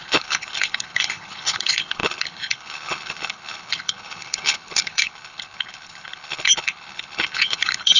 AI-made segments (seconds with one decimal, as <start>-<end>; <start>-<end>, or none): 0.0-8.0